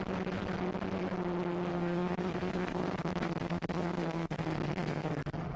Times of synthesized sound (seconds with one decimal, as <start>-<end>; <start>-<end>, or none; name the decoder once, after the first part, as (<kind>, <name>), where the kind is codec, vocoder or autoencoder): 1.7-5.1 (codec, SNAC)